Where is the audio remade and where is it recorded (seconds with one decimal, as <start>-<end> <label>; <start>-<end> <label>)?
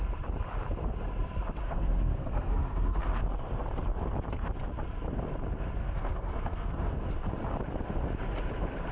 0.0-1.6 recorded; 1.6-3.0 remade; 3.0-5.8 recorded; 5.8-7.1 remade; 7.1-8.9 recorded